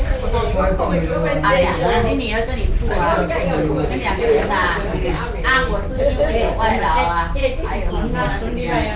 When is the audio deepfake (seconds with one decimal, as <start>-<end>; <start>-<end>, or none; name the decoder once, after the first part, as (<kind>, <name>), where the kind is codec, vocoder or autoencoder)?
none